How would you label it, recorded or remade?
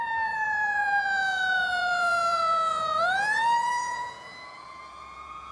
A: remade